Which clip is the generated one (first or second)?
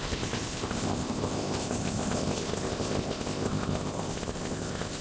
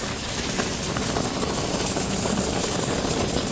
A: first